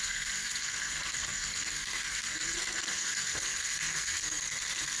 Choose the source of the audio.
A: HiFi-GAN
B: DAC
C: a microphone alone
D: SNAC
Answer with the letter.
D